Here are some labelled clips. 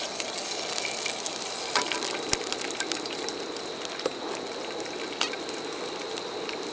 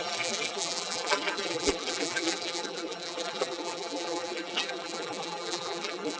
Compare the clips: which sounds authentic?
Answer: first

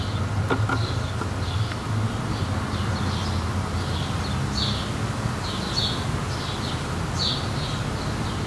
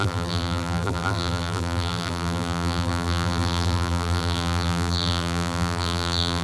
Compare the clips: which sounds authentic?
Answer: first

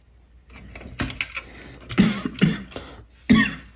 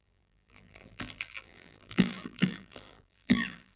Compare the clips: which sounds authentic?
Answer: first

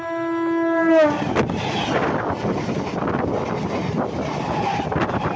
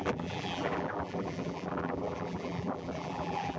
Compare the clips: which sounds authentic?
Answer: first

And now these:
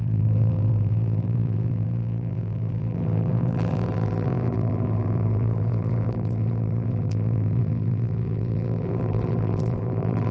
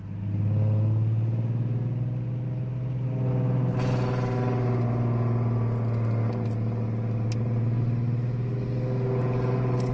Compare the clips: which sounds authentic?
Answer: second